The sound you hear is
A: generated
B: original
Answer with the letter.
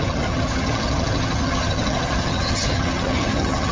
A